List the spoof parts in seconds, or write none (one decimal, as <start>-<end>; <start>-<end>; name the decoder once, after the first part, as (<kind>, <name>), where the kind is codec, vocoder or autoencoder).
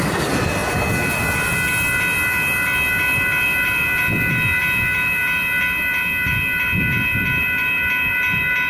none